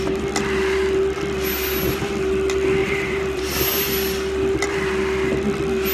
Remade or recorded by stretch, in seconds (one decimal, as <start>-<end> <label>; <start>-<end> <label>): 0.0-2.8 recorded; 2.8-3.4 remade; 3.4-5.9 recorded